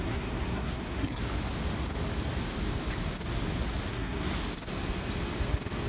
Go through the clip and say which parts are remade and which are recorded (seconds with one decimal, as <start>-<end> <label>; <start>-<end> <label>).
0.0-1.2 remade; 1.2-3.9 recorded; 3.9-4.3 remade; 4.3-5.9 recorded